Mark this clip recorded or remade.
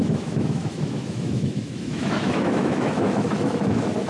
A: remade